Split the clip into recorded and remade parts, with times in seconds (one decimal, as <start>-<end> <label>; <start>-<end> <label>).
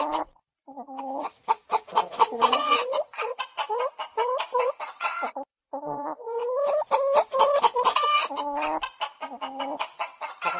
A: 0.0-0.5 remade; 0.5-1.0 recorded; 1.0-3.6 remade; 3.6-4.6 recorded; 4.6-6.4 remade; 6.4-9.6 recorded; 9.6-10.6 remade